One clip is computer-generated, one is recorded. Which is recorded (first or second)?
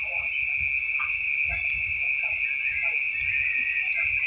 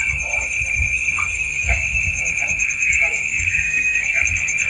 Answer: first